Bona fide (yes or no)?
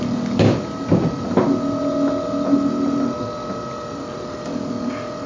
yes